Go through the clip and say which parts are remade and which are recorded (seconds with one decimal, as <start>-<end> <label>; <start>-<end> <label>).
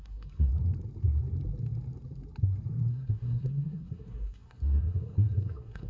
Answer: 0.0-0.5 remade; 0.5-2.9 recorded; 2.9-5.9 remade